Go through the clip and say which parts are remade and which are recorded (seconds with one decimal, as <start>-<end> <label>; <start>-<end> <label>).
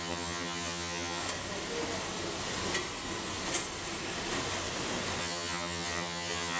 0.0-1.2 remade; 1.2-5.2 recorded; 5.2-6.6 remade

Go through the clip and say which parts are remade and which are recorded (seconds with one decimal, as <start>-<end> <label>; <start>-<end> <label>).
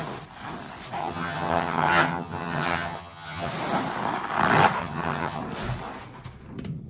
0.0-1.0 recorded; 1.0-3.5 remade; 3.5-4.8 recorded; 4.8-5.4 remade; 5.4-6.9 recorded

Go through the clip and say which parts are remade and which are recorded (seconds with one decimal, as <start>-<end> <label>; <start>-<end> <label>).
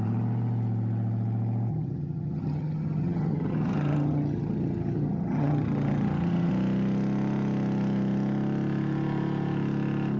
0.0-1.7 recorded; 1.7-6.5 remade; 6.5-10.2 recorded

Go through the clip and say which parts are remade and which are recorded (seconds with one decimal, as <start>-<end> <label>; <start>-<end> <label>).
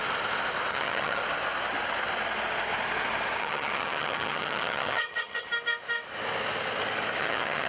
0.0-0.7 recorded; 0.7-1.2 remade; 1.2-3.4 recorded; 3.4-5.5 remade; 5.5-7.2 recorded; 7.2-7.7 remade